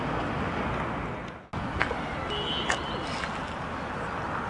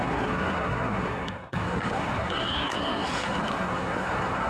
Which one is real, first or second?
first